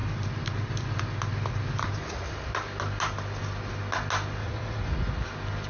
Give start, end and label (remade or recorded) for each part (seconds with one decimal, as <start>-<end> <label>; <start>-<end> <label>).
0.0-4.4 recorded; 4.4-4.9 remade; 4.9-5.7 recorded